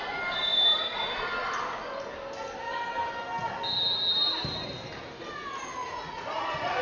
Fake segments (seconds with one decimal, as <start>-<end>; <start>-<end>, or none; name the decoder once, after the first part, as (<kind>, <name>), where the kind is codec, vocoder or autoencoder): 5.8-6.8 (vocoder, Vocos)